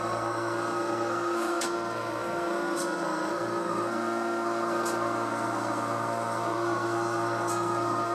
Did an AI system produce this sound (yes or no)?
yes